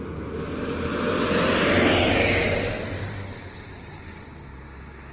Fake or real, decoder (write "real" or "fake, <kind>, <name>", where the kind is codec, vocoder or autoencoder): real